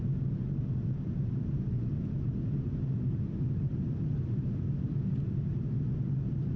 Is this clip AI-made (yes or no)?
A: no